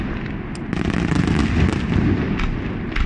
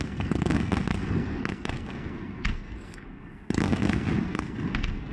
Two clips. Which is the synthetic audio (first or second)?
second